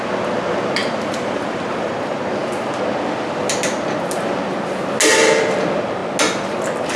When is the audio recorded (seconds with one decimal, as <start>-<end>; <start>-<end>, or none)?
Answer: 0.0-0.8; 1.9-7.0